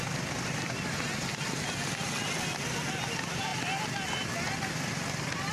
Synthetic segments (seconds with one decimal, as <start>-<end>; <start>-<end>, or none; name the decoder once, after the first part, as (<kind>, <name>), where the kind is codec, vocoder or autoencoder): none